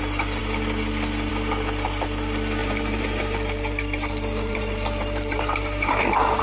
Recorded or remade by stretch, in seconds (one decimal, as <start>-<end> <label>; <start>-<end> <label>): 0.0-2.6 recorded; 2.6-6.4 remade